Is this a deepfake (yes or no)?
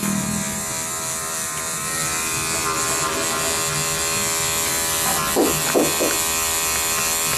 no